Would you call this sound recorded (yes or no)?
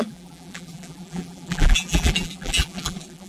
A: no